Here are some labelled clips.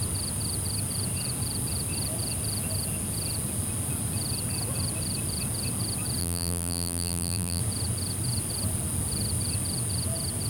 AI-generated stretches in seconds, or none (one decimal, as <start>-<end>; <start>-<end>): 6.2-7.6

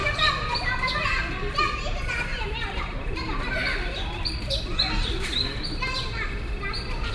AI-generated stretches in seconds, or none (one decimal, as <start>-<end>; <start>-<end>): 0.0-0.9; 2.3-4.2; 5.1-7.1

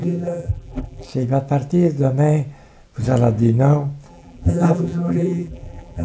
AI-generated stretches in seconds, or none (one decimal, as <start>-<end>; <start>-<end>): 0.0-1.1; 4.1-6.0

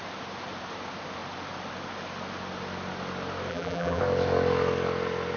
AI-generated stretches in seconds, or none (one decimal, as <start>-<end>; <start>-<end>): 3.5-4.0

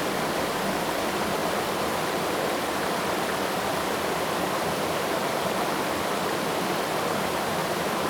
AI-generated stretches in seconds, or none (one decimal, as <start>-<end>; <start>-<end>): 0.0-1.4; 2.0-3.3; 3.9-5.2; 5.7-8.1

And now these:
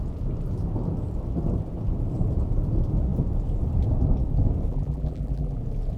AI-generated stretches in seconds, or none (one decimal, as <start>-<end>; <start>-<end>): 4.7-5.6